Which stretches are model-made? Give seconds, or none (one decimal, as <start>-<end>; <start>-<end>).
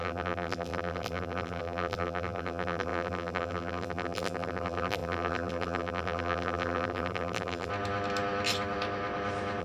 0.0-7.7